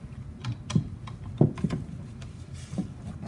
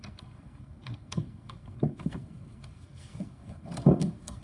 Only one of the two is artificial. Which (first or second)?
second